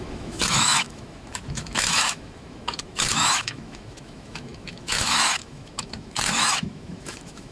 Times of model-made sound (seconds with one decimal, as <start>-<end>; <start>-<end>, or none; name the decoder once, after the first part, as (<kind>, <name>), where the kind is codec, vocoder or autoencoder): 0.0-7.5 (autoencoder, DAC-VAE)